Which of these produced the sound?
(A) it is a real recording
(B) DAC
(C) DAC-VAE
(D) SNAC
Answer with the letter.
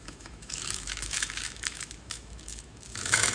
C